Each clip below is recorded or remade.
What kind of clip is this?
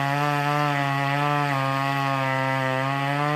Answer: recorded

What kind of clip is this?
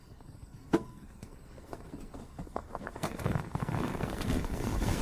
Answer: remade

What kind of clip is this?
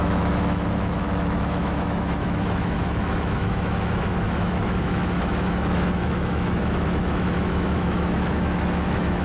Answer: remade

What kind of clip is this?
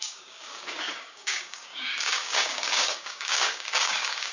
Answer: remade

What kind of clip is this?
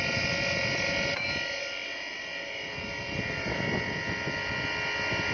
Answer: recorded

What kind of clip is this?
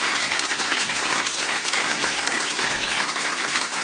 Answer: remade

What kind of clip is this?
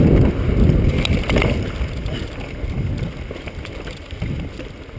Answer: recorded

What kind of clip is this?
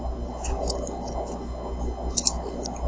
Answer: recorded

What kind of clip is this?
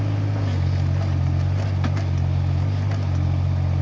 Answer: recorded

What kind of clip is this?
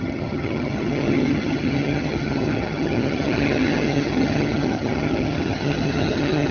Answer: remade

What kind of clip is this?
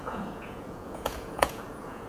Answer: remade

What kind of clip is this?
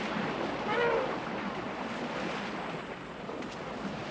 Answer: recorded